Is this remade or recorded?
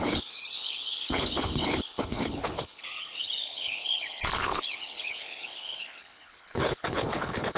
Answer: remade